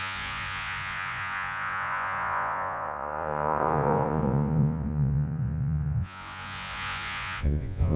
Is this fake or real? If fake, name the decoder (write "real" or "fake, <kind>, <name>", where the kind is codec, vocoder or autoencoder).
fake, vocoder, Vocos